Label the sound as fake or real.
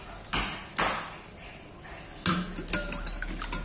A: real